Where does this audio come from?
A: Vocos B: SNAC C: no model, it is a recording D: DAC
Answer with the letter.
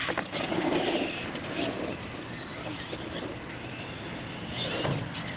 C